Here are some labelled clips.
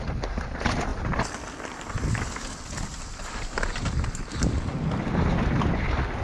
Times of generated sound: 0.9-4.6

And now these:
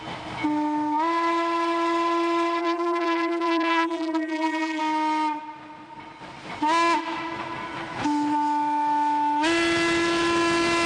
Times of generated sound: 2.6-4.8

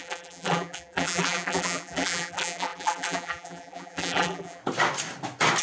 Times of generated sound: 0.0-4.6

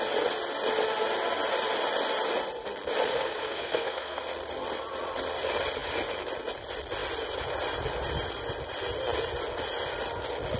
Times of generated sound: 3.1-4.2

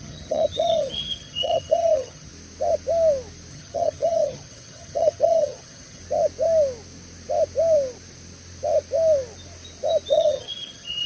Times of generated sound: 0.0-2.3; 3.5-6.0; 10.1-11.1

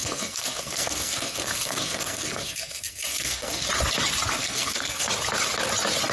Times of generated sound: 0.0-3.7; 4.4-5.1

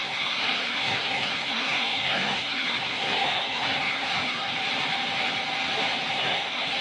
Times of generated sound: 0.0-4.5; 6.1-6.8

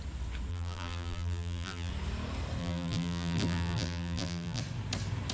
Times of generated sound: 0.5-1.9; 2.6-4.6